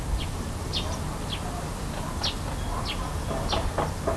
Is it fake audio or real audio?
real